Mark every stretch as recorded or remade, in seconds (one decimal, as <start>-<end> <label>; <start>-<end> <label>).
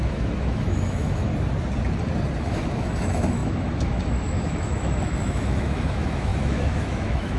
0.0-1.3 remade; 1.3-2.4 recorded; 2.4-7.4 remade